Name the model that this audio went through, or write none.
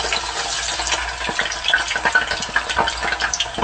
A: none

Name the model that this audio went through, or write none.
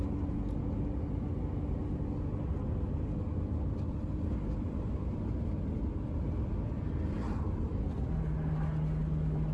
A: none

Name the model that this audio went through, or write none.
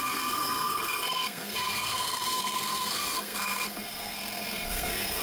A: codec, SNAC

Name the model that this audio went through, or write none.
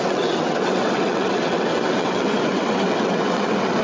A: vocoder, WaveNeXt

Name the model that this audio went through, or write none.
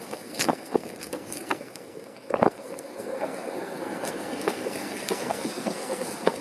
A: codec, SNAC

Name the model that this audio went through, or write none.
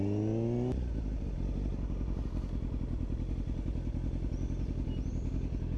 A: none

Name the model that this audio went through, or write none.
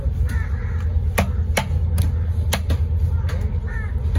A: none